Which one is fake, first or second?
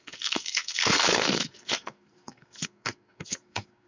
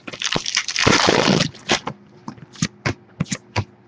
first